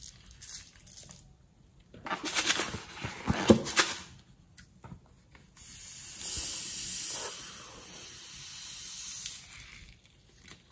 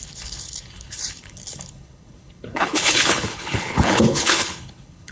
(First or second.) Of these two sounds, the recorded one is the first